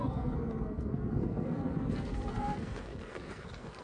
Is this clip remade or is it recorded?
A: remade